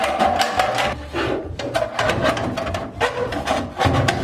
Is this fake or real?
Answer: real